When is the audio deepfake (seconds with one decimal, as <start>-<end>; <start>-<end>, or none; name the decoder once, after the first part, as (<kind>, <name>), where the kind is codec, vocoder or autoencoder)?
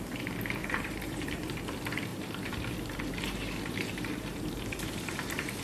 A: 0.6-1.6 (vocoder, BigVGAN v2); 2.1-5.6